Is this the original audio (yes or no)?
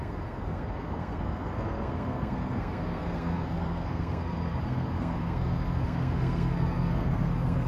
no